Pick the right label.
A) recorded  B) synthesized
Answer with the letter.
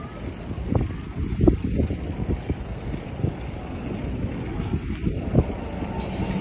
A